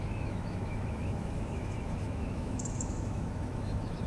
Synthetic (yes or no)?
yes